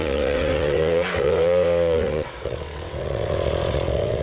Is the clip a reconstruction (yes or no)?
yes